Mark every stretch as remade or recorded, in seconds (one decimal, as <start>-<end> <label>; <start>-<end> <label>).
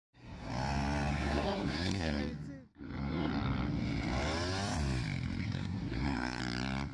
0.0-0.5 remade; 0.5-1.1 recorded; 1.1-2.2 remade; 2.2-2.7 recorded; 2.7-3.3 remade; 3.3-5.4 recorded; 5.4-6.4 remade; 6.4-6.9 recorded